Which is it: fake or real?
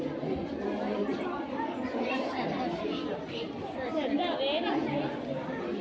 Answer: fake